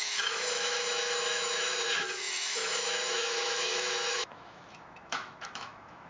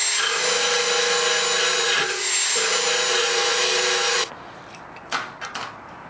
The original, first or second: second